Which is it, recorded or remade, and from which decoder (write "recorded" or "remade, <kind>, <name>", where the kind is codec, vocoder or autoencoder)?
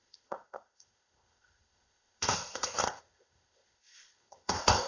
remade, codec, ZipCodec